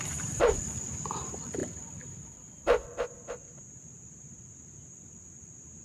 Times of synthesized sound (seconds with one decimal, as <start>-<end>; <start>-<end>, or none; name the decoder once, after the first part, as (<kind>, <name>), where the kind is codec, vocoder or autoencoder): 0.0-5.8 (vocoder, BigVGAN v2)